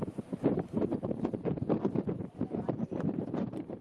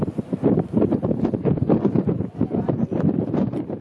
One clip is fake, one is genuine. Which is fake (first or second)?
first